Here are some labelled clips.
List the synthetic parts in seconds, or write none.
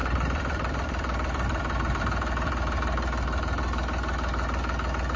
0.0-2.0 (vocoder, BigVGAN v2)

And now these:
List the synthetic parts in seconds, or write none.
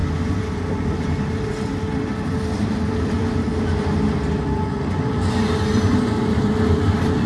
0.9-3.5 (vocoder, BigVGAN v2)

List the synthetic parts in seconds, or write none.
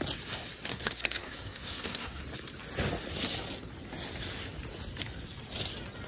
0.7-2.2 (codec, SNAC)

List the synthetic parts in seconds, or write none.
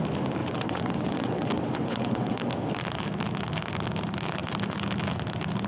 0.4-2.4 (vocoder, WaveNeXt)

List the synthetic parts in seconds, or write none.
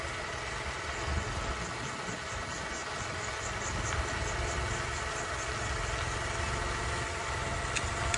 none